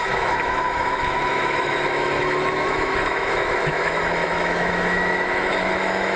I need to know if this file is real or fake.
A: fake